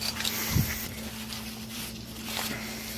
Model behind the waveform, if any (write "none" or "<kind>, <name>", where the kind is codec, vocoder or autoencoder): none